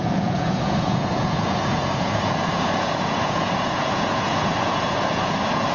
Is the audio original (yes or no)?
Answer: no